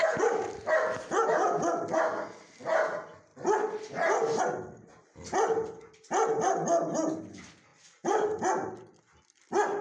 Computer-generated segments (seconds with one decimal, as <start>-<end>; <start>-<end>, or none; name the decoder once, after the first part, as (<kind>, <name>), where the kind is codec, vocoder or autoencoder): none